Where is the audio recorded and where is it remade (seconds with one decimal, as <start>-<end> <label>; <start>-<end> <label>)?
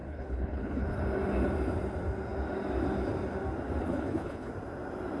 0.0-1.0 remade; 1.0-3.8 recorded; 3.8-4.5 remade; 4.5-5.2 recorded